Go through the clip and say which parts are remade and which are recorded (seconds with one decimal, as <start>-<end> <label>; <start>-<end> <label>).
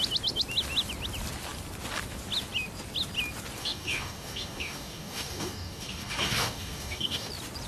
0.0-3.6 recorded; 3.6-7.3 remade; 7.3-7.7 recorded